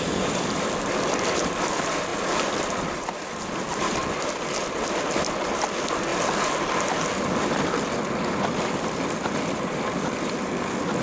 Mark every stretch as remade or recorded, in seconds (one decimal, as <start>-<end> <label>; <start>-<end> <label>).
0.0-2.1 remade; 2.1-2.6 recorded; 2.6-6.1 remade; 6.1-8.4 recorded; 8.4-11.0 remade